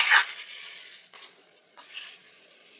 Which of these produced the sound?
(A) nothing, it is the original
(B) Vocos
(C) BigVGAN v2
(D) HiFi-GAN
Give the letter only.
B